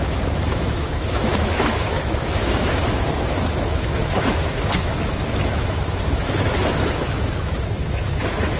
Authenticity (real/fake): fake